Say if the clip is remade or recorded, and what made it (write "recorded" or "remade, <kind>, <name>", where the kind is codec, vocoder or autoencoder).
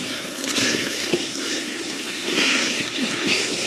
remade, codec, SNAC